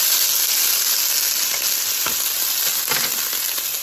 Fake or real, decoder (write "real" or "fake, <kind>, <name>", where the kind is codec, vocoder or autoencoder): real